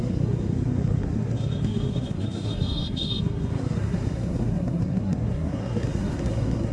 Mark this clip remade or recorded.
remade